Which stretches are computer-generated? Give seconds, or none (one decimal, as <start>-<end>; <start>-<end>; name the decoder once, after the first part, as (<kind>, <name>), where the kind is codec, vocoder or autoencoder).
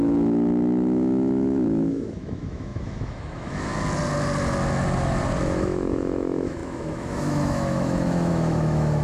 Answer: 0.0-3.7 (autoencoder, DAC-VAE); 5.4-9.0